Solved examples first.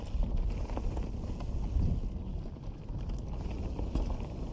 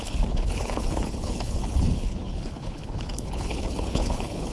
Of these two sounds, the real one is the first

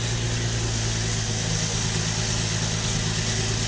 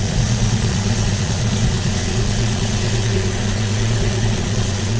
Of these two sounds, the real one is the first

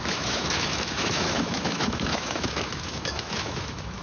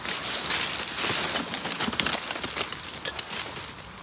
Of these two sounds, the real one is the second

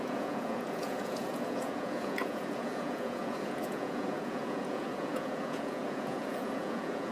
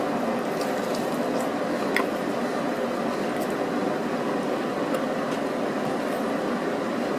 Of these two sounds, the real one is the second